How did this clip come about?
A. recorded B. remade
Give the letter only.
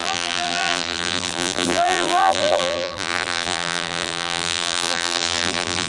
B